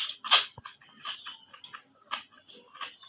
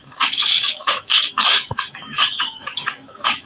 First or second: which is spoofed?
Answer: second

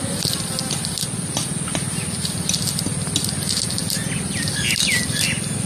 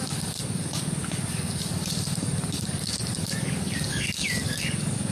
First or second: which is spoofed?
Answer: second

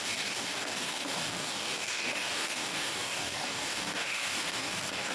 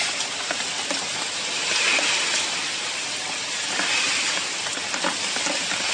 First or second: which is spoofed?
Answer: first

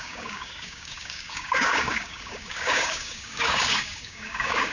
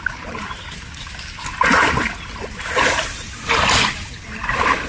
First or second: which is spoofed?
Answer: first